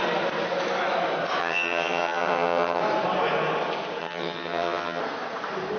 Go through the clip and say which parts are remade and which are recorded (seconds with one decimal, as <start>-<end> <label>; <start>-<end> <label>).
0.0-1.4 recorded; 1.4-2.8 remade; 2.8-4.0 recorded; 4.0-5.0 remade; 5.0-5.8 recorded